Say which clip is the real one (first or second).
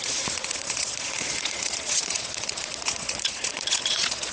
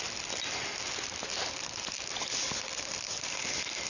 second